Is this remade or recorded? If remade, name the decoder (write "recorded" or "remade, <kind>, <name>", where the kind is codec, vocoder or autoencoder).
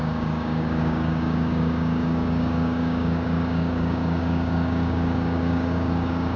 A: remade, codec, DAC